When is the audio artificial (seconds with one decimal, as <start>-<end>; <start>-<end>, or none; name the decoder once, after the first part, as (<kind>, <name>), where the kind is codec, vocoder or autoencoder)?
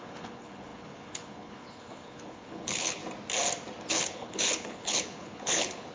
0.0-3.0 (codec, HILCodec); 3.9-5.9